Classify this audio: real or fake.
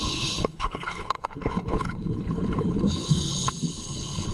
fake